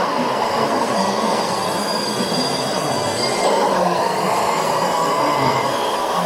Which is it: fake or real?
fake